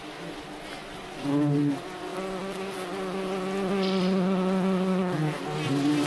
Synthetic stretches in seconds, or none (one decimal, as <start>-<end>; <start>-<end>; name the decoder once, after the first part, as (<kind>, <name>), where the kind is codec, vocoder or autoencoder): none